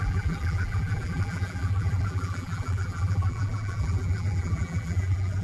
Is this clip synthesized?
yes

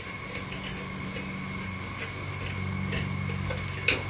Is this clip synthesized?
no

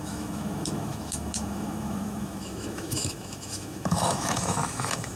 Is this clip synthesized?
yes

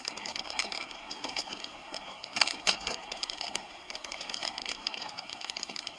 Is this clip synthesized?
yes